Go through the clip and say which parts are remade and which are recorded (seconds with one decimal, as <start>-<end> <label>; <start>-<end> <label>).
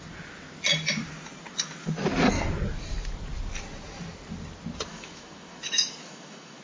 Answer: 0.0-4.9 recorded; 4.9-6.6 remade